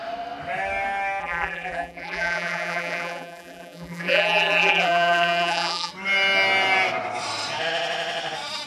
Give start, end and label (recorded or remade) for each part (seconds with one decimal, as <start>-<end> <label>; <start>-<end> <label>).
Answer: 0.0-1.2 recorded; 1.2-5.9 remade; 5.9-8.7 recorded